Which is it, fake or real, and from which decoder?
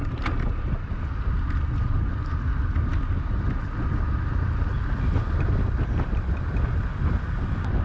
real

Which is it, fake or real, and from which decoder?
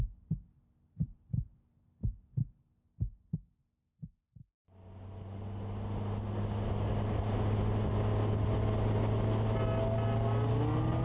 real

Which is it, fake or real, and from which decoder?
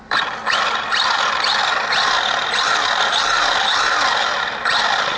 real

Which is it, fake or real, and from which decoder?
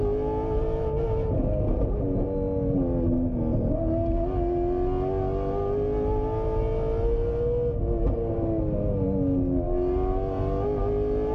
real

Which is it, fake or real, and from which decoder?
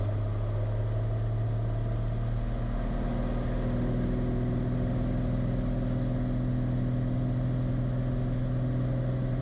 real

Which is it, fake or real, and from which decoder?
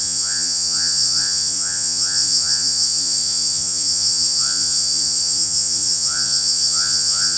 fake, vocoder, Vocos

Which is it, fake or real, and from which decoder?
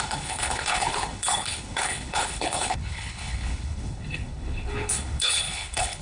fake, codec, HILCodec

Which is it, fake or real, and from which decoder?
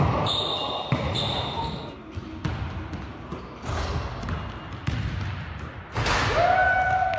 real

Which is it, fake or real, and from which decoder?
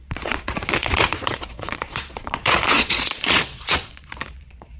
fake, vocoder, Vocos